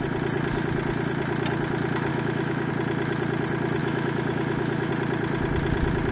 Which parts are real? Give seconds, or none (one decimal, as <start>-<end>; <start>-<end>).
0.0-2.1; 2.7-3.8; 4.9-6.1